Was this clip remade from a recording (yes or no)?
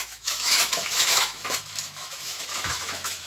yes